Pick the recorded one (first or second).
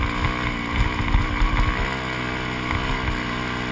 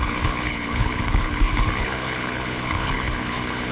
first